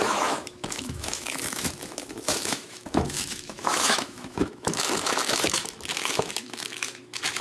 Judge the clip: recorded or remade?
remade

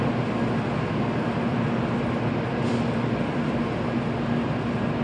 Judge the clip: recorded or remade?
recorded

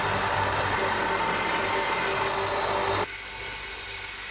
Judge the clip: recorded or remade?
recorded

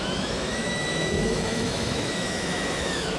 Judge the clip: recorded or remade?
remade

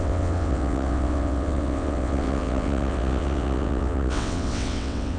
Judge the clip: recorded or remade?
remade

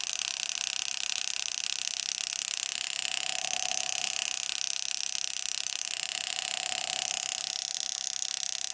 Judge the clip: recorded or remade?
recorded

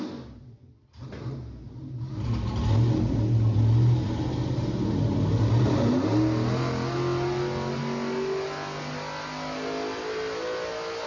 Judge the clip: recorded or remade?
recorded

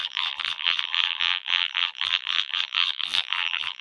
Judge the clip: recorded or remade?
remade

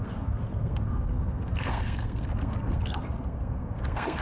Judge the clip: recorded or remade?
remade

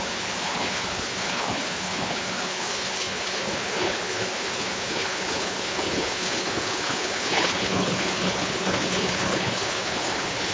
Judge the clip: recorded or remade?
remade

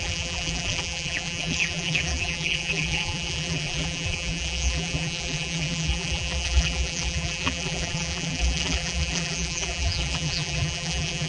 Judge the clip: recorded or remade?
remade